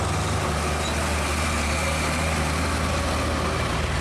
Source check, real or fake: real